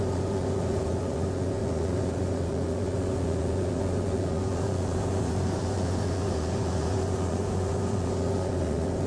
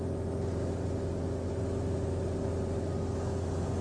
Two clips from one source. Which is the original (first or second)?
second